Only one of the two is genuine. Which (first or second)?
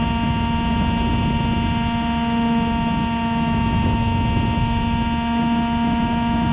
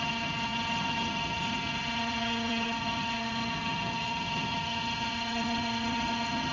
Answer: first